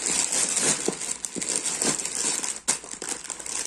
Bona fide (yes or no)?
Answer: yes